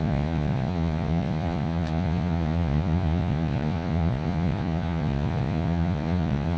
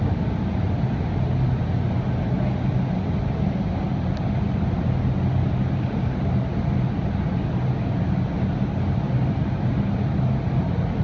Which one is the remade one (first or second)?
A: first